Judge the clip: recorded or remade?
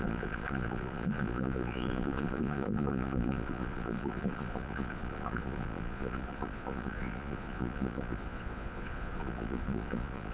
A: remade